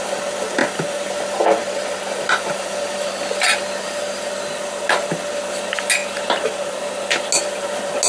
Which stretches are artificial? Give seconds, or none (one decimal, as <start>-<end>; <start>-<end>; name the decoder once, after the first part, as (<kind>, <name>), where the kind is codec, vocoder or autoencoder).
none